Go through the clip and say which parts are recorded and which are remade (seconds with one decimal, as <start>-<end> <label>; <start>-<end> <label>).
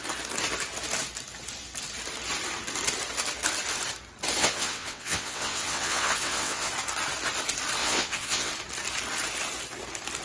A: 0.0-4.4 recorded; 4.4-6.7 remade; 6.7-7.8 recorded; 7.8-8.5 remade; 8.5-10.2 recorded